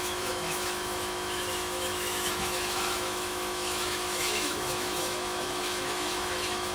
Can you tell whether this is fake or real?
fake